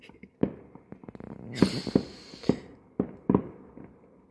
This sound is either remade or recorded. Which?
recorded